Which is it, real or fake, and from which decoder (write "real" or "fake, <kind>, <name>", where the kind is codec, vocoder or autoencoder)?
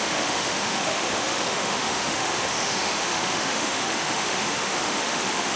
fake, autoencoder, DAC-VAE